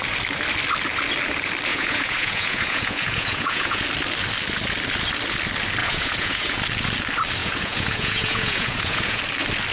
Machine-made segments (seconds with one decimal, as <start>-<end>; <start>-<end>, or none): 1.7-3.8; 5.8-6.6; 7.4-9.2